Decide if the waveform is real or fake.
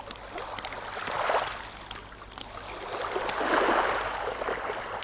real